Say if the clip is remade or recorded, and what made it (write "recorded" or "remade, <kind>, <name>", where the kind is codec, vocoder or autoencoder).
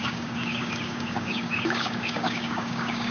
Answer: remade, codec, DAC